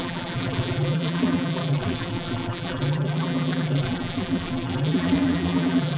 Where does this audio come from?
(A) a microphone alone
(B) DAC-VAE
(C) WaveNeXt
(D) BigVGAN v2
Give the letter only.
D